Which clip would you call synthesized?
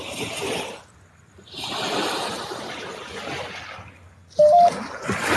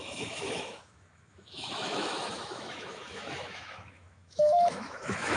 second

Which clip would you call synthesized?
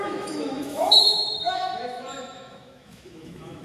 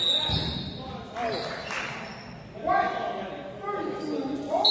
first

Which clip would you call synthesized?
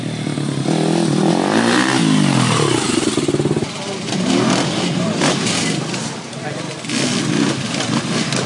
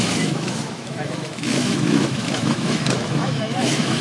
second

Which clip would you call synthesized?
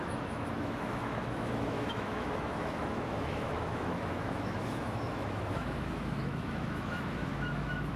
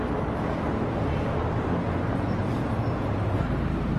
first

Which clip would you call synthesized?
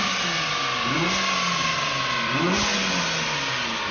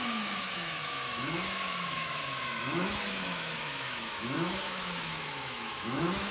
second